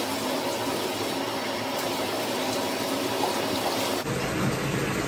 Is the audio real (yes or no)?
yes